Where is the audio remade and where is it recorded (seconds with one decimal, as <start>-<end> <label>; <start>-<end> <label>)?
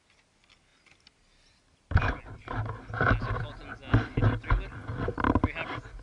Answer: 0.0-6.0 recorded